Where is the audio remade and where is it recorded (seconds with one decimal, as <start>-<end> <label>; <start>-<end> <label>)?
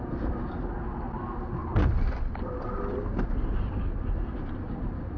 0.0-5.2 recorded